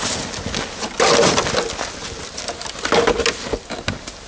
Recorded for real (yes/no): yes